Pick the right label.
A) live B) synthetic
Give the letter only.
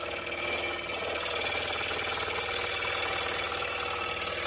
A